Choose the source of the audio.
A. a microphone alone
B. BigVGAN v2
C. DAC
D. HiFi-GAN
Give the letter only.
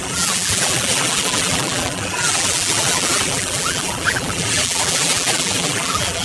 B